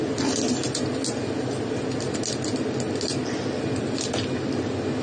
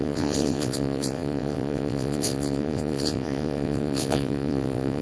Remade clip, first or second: second